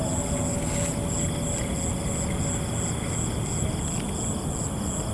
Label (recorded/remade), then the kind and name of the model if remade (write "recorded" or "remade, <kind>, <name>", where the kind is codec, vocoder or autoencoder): recorded